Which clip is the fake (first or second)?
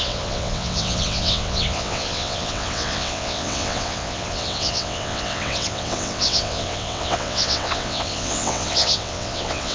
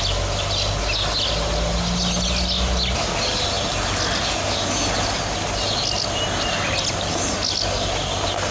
first